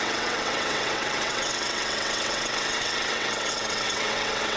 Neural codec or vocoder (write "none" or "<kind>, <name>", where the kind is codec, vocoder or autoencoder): vocoder, WaveNeXt